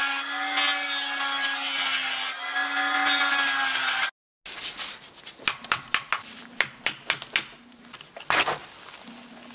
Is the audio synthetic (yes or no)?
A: no